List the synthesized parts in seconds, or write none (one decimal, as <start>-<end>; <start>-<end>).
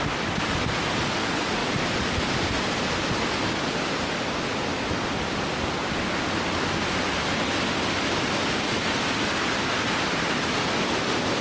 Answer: 0.0-1.6; 5.9-11.4